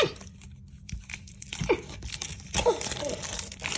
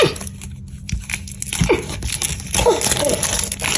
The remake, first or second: first